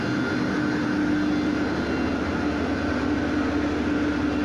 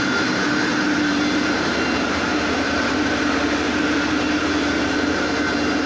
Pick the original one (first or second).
first